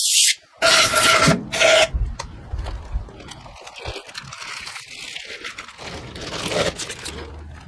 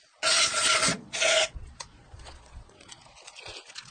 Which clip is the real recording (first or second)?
first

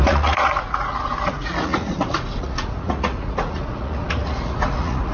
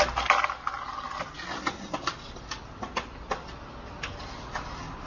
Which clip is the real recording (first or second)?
second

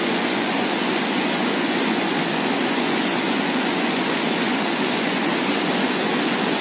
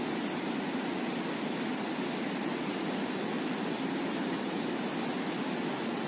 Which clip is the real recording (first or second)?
second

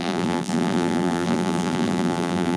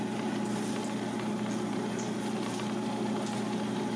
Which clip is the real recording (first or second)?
second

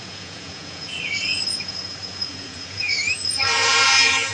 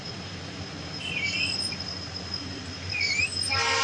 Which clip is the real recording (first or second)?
second